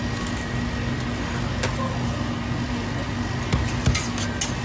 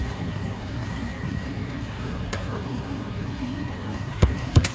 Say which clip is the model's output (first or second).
second